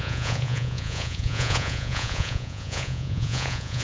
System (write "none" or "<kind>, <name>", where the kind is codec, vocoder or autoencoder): vocoder, Vocos